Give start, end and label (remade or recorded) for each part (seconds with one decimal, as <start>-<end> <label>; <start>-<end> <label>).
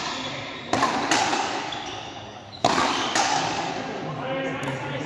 0.0-1.3 recorded; 1.3-3.7 remade; 3.7-5.1 recorded